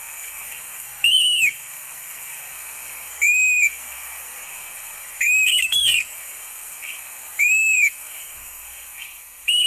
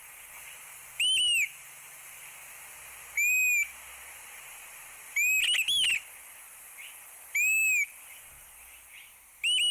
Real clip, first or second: second